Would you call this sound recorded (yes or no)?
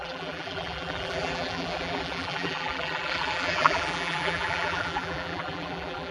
no